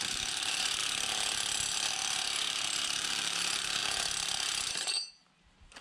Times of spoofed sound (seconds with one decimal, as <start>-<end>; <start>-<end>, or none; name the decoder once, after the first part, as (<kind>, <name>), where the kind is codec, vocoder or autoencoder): 0.0-0.8 (vocoder, BigVGAN v2); 1.9-3.8; 4.7-5.8